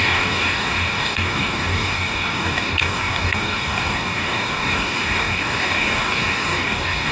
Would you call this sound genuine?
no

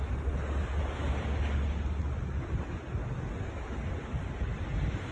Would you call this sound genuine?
yes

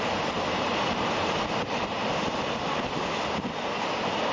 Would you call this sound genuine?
yes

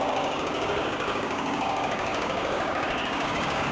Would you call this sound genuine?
no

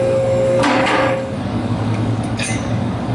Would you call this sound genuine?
no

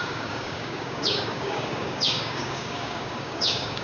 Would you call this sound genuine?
no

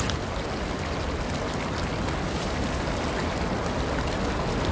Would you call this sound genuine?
yes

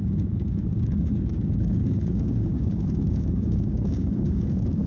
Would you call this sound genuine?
no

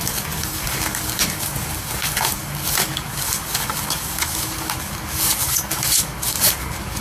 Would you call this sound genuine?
no